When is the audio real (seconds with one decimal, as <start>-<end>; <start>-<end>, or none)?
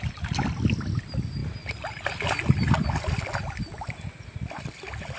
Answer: 0.0-5.2